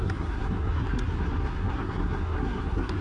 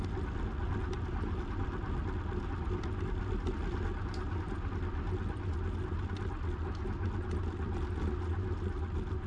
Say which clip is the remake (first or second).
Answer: first